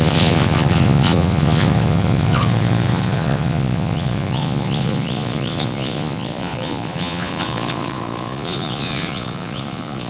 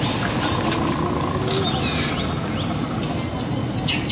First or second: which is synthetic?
first